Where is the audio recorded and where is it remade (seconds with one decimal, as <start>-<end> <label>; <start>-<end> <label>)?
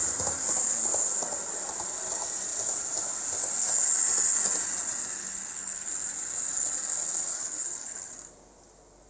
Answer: 0.0-5.2 recorded; 5.2-5.9 remade; 5.9-7.3 recorded; 7.3-8.1 remade; 8.1-9.1 recorded